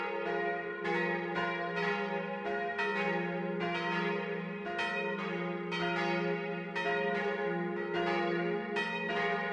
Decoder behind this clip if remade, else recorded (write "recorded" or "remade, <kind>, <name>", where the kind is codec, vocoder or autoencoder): recorded